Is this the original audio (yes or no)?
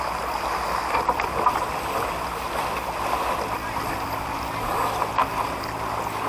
yes